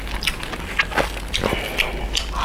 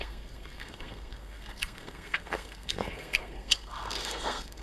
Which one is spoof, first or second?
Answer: second